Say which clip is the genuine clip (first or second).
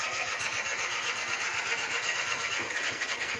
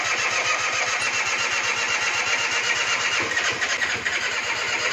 second